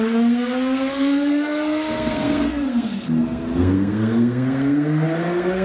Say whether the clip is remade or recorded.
remade